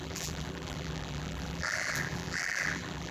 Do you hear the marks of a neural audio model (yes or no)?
yes